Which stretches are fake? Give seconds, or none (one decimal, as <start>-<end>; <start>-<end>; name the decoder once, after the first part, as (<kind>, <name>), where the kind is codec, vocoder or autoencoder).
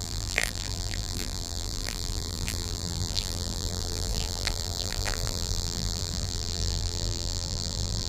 0.0-8.1 (vocoder, BigVGAN v2)